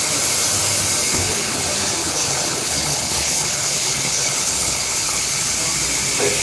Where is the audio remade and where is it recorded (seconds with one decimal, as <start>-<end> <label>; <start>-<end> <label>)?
0.0-1.0 recorded; 1.0-1.6 remade; 1.6-2.0 recorded; 2.0-5.5 remade; 5.5-6.4 recorded